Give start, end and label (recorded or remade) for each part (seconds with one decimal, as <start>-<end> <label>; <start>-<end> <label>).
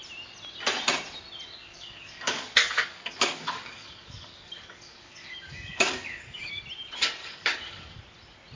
0.0-1.6 recorded; 1.6-6.6 remade; 6.6-7.2 recorded; 7.2-8.0 remade; 8.0-8.6 recorded